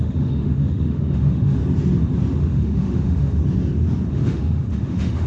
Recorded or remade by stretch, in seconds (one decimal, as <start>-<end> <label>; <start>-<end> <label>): 0.0-1.6 remade; 1.6-2.4 recorded; 2.4-3.4 remade; 3.4-4.1 recorded; 4.1-5.3 remade